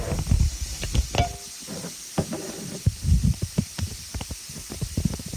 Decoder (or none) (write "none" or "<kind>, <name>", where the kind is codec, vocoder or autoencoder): none